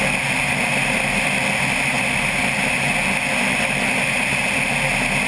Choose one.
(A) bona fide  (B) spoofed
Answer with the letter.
A